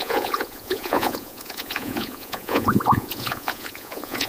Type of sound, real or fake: fake